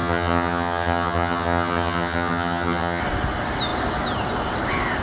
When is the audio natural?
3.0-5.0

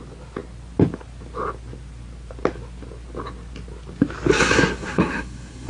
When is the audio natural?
0.0-4.3

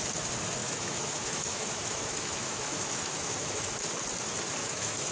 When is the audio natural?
0.0-0.6; 3.7-4.6

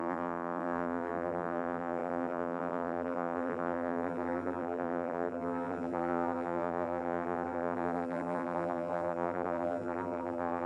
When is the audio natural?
none

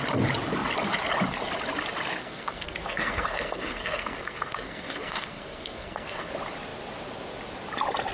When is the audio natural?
0.0-2.2; 6.3-8.1